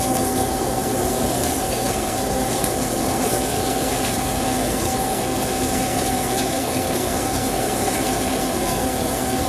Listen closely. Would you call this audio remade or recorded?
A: remade